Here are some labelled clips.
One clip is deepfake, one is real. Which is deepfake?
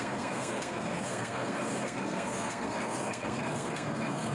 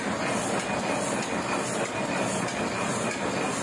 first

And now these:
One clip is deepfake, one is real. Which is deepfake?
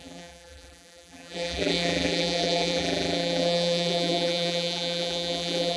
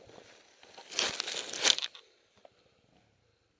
first